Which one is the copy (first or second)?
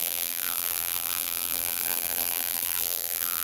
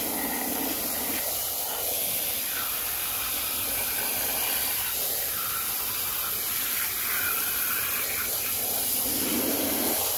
first